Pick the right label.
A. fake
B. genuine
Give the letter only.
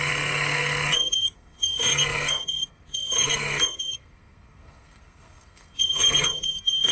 A